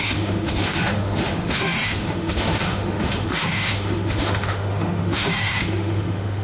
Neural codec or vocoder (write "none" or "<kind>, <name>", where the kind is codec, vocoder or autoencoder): autoencoder, DAC-VAE